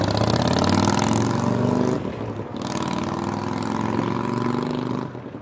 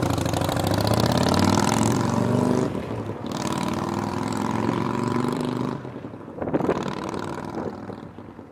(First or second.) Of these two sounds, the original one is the first